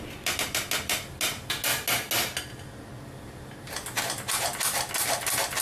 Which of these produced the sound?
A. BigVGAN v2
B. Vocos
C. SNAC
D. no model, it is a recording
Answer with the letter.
D